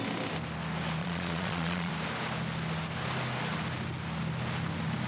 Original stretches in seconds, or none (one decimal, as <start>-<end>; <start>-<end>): 0.0-1.0; 1.9-5.1